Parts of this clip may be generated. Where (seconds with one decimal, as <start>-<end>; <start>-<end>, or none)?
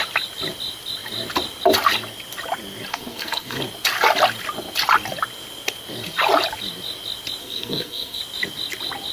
2.9-3.6; 7.4-8.2